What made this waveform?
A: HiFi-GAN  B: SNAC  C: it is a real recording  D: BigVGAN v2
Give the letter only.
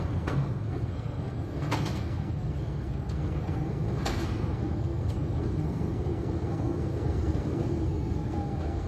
B